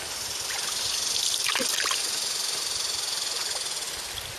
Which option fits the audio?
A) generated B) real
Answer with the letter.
B